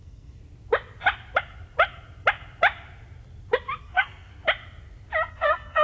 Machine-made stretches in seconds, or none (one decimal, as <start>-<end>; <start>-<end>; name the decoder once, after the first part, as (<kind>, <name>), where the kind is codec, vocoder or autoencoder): 0.0-0.4 (codec, SNAC); 3.8-4.3; 5.3-5.8